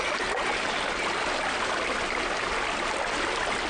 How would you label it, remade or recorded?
recorded